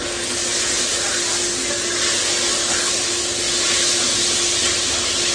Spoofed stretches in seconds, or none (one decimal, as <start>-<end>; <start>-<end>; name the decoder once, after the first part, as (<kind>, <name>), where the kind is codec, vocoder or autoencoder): 2.6-3.2 (codec, HILCodec)